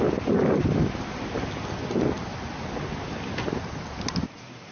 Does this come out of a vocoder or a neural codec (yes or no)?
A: no